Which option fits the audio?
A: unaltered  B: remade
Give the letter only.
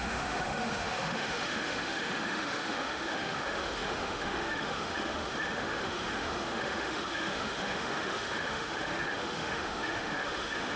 B